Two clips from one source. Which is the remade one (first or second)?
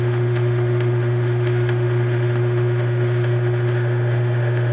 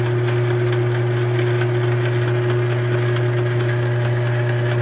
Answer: first